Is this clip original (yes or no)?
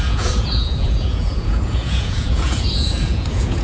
no